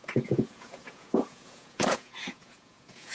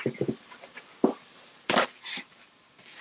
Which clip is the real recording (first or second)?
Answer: second